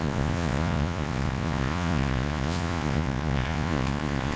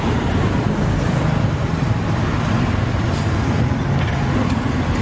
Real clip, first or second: second